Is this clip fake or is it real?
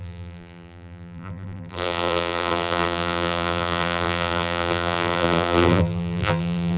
fake